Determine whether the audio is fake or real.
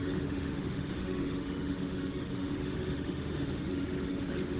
fake